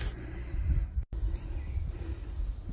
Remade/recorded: recorded